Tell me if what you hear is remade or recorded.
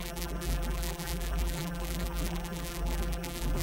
remade